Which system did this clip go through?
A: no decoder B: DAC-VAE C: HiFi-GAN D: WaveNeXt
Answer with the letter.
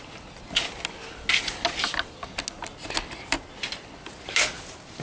A